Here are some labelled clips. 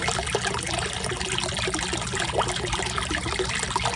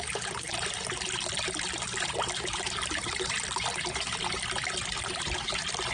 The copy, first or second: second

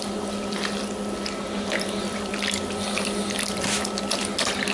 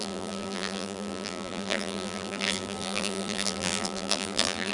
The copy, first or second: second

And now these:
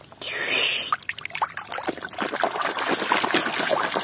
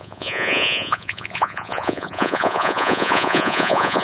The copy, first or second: second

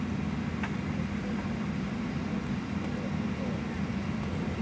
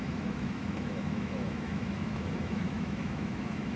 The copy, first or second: second